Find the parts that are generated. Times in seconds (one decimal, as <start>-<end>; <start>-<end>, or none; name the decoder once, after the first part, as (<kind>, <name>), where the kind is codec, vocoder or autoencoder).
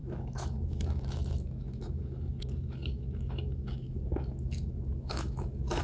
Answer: 0.0-5.8 (autoencoder, DAC-VAE)